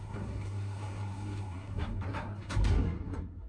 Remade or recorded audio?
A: remade